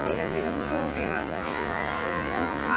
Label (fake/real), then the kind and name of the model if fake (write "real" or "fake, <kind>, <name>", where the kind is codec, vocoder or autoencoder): fake, vocoder, Vocos